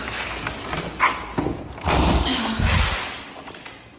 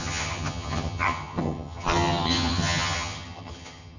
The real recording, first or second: first